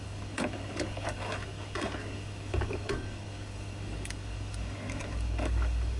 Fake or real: fake